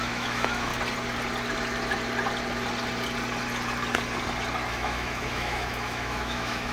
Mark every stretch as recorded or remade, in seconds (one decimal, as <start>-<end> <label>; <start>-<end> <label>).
0.0-0.7 remade; 0.7-4.7 recorded; 4.7-6.7 remade